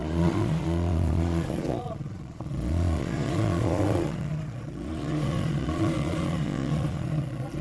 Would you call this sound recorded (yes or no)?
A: no